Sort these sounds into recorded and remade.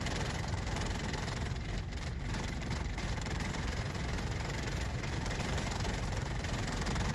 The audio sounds remade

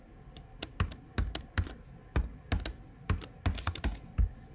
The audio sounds recorded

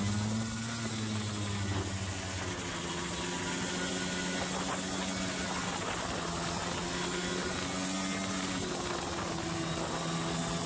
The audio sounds recorded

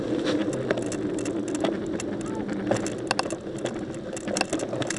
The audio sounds recorded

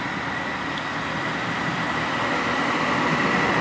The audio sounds recorded